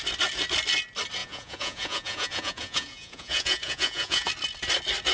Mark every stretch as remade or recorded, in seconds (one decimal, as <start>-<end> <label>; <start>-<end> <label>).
0.0-1.2 recorded; 1.2-4.3 remade; 4.3-5.1 recorded